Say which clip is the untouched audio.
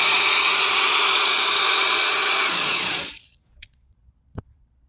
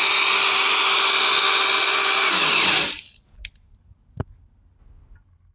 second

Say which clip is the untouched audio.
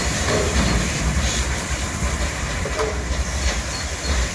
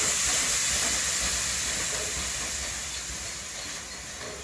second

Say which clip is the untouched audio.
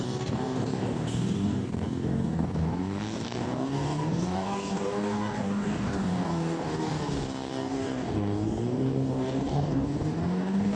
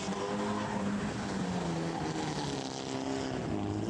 second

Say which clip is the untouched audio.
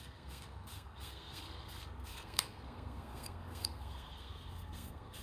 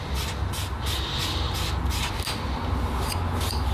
second